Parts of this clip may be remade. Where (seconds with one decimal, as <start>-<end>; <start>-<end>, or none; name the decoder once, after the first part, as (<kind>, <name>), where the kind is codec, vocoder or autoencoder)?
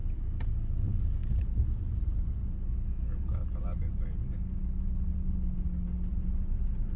none